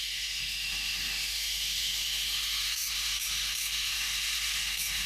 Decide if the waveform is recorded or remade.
remade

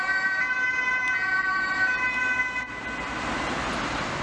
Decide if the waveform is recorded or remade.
recorded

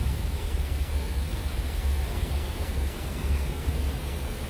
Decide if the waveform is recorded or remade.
remade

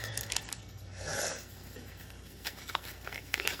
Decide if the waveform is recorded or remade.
remade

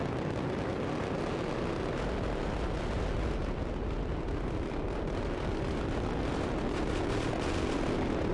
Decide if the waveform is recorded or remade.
recorded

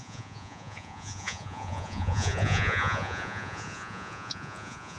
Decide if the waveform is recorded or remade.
remade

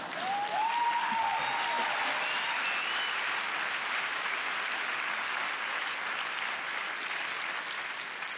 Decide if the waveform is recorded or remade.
recorded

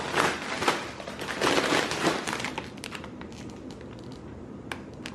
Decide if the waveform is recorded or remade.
recorded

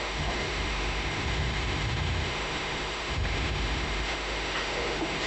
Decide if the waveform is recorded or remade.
remade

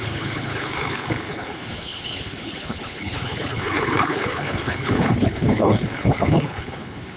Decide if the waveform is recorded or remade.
remade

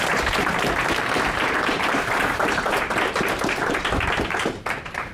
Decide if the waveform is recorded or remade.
remade